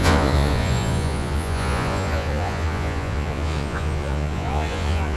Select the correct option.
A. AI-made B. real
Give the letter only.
A